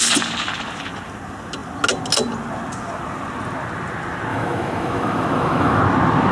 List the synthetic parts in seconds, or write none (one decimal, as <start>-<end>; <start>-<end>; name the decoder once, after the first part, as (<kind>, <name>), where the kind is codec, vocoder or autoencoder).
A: 4.3-5.8 (autoencoder, DAC-VAE)